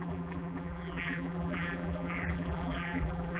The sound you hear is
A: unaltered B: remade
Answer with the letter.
B